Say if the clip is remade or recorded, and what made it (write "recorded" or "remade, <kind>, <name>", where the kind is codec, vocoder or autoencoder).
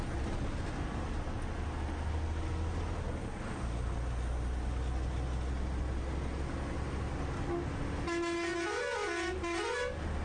recorded